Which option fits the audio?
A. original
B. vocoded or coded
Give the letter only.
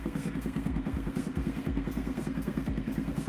B